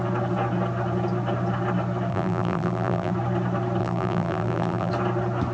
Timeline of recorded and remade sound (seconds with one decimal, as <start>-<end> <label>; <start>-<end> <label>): 0.0-2.1 recorded; 2.1-3.1 remade; 3.1-3.8 recorded; 3.8-4.9 remade; 4.9-5.5 recorded